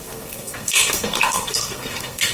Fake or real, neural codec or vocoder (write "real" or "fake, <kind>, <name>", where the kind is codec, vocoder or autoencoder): fake, codec, SNAC